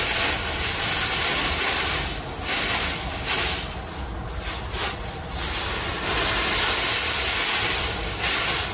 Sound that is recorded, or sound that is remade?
recorded